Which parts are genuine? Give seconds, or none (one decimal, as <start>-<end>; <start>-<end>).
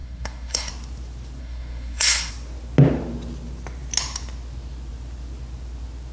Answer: 0.7-1.4; 2.3-6.1